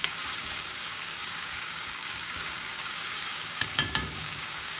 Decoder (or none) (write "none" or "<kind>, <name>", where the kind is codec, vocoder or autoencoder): codec, DAC